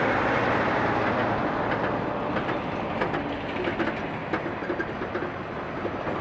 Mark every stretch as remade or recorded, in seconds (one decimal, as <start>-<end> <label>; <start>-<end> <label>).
0.0-6.2 recorded